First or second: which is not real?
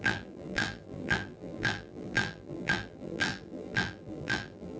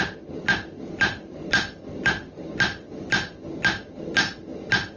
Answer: first